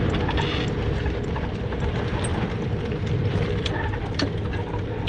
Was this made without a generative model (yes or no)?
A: yes